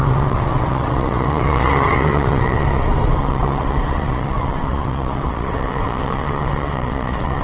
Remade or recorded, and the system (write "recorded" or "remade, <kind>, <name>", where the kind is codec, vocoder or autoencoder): remade, vocoder, WaveNeXt